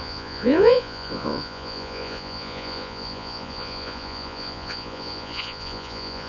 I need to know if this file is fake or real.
fake